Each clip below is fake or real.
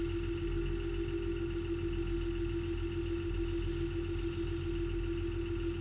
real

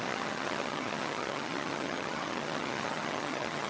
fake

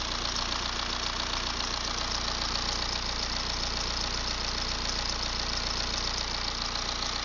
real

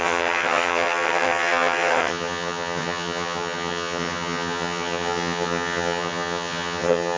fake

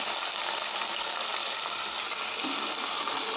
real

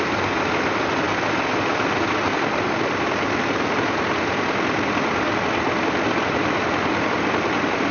real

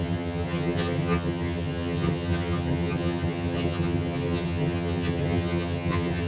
fake